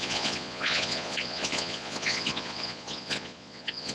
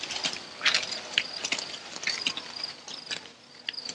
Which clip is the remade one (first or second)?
first